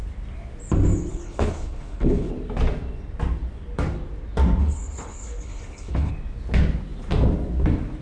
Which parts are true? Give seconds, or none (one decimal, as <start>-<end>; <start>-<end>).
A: 0.0-1.1; 2.3-4.6; 6.1-8.0